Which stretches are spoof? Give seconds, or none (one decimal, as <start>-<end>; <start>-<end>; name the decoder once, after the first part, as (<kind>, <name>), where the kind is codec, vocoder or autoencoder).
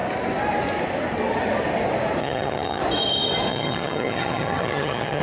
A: 2.2-2.8 (vocoder, HiFi-GAN); 3.5-5.2